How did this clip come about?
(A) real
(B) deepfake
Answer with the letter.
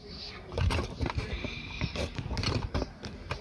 A